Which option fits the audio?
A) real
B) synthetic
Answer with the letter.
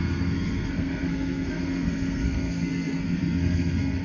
B